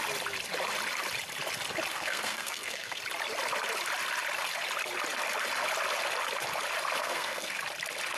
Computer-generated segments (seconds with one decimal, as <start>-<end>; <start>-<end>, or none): 1.9-3.0; 7.0-7.6